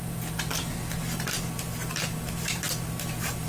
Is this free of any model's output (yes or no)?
no